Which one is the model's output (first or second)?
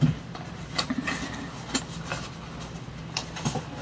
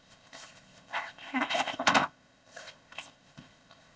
second